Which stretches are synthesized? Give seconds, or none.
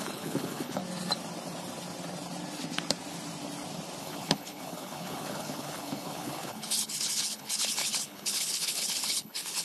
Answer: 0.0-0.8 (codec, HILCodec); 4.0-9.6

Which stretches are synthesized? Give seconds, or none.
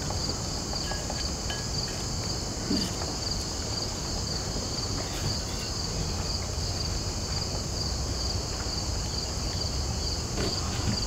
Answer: none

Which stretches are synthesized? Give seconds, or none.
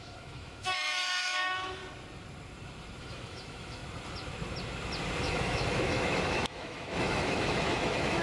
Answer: 0.0-1.8 (autoencoder, DAC-VAE); 3.0-3.8; 5.2-8.2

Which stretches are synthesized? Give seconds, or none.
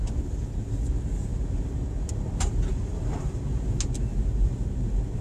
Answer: 2.7-3.4 (vocoder, BigVGAN v2)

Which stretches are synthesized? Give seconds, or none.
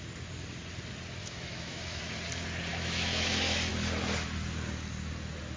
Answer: 1.2-2.0 (autoencoder, DAC-VAE); 2.7-3.7